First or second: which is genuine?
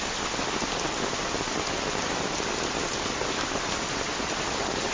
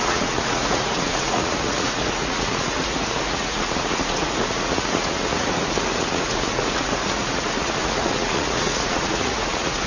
first